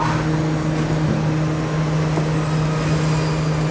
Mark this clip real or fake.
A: real